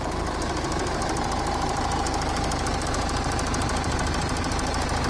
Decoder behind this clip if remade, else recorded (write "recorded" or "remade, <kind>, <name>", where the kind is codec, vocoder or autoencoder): remade, vocoder, BigVGAN v2